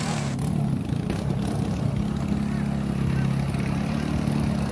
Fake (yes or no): no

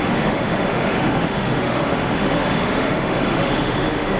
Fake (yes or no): yes